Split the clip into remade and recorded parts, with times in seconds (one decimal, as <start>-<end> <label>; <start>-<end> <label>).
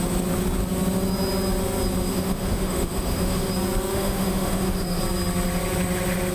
0.0-2.1 recorded; 2.1-3.5 remade; 3.5-3.9 recorded; 3.9-5.0 remade; 5.0-6.3 recorded